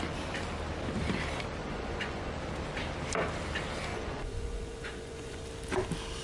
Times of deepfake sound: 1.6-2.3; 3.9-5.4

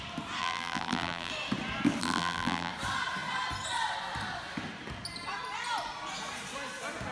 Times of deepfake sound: 0.4-1.3; 2.0-2.7